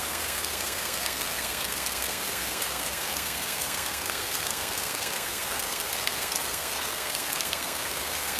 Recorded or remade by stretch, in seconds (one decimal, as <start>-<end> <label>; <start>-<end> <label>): 0.0-8.4 remade

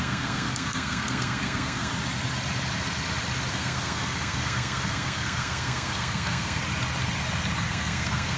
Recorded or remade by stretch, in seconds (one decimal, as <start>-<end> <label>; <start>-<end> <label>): 0.0-1.9 remade; 1.9-3.5 recorded; 3.5-6.6 remade; 6.6-7.7 recorded; 7.7-8.4 remade

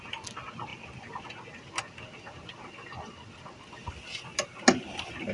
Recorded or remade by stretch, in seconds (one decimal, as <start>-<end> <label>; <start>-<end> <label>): 0.0-5.3 recorded